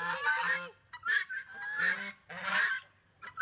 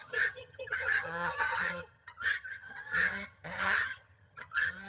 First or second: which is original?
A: first